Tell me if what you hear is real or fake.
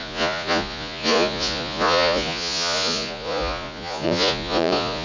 fake